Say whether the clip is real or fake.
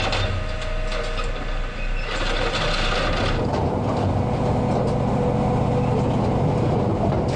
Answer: real